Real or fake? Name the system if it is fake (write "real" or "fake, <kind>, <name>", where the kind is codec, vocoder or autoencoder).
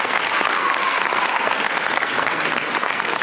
fake, codec, SNAC